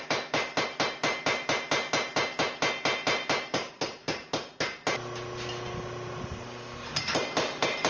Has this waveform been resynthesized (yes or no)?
no